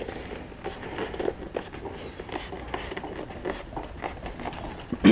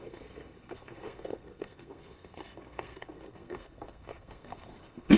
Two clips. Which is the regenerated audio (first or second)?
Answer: second